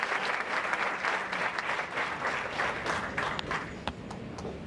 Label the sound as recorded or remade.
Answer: recorded